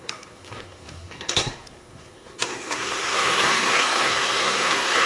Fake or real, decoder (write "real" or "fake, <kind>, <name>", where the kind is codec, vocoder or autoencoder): fake, codec, SNAC